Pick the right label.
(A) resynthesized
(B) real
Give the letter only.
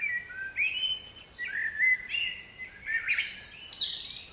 B